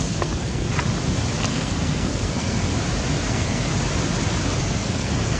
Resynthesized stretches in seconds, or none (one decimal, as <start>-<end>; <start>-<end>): 0.0-0.7; 1.5-2.7; 3.3-3.7; 4.6-5.4